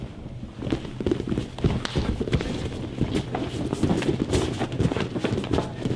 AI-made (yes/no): no